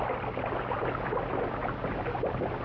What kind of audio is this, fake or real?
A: real